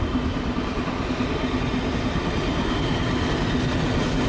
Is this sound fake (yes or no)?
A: no